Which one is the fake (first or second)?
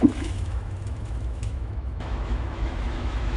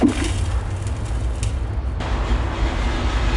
first